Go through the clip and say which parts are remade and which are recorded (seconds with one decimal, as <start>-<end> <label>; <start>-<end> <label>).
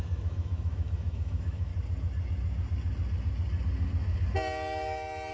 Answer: 0.0-1.7 remade; 1.7-5.3 recorded